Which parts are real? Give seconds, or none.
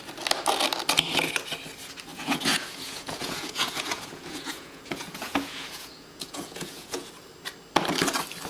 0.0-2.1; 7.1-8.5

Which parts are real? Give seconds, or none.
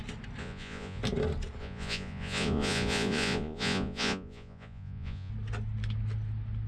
0.0-0.4; 1.0-1.6; 5.3-6.7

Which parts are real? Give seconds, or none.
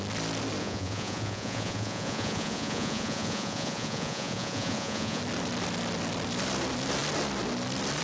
0.0-0.6; 5.2-8.0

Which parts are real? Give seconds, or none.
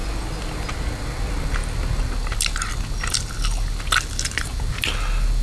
0.0-5.4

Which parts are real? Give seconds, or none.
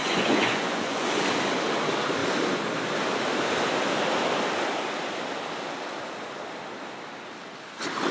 1.1-8.1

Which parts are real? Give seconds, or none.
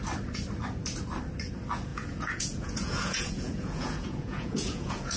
0.0-1.9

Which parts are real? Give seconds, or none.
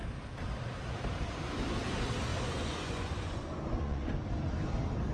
0.0-2.3; 4.1-5.1